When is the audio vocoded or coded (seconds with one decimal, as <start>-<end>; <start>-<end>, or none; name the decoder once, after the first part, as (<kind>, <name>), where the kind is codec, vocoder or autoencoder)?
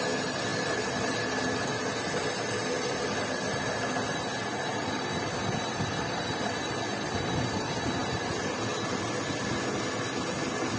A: 0.5-1.3 (vocoder, BigVGAN v2); 4.7-7.3; 8.0-8.6